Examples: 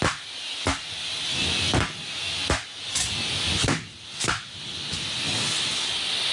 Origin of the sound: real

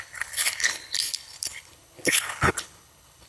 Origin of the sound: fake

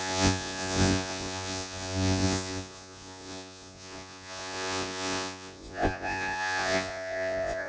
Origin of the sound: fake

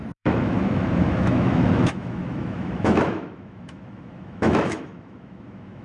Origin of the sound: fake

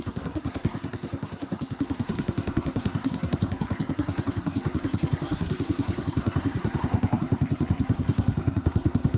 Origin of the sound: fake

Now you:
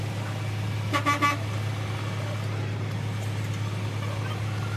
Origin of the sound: real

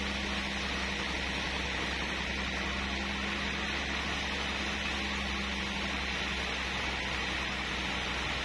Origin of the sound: real